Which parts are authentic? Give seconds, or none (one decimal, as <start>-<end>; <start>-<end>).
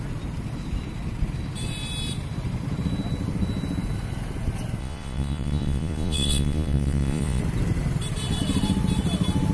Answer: 0.0-4.8; 7.4-9.5